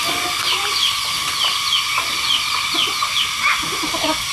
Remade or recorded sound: recorded